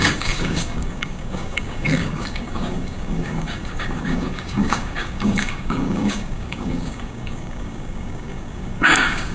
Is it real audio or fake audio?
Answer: fake